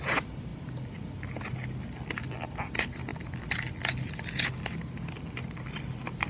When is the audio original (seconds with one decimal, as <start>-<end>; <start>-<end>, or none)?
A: 0.0-6.3